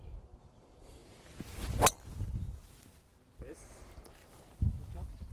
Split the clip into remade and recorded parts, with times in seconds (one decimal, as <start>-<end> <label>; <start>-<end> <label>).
0.0-5.3 recorded